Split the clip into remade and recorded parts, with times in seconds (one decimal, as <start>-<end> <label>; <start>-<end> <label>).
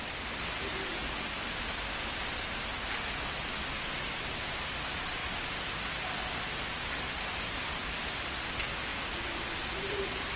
0.0-10.4 recorded